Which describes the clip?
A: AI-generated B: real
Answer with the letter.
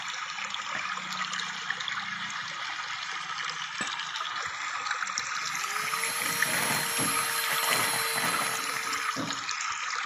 B